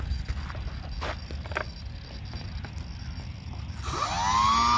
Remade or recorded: recorded